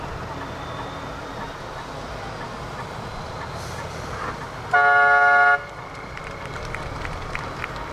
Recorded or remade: recorded